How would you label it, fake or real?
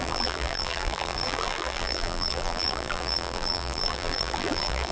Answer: fake